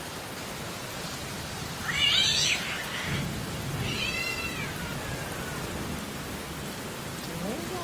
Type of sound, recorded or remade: remade